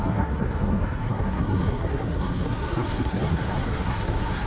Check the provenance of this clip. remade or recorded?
remade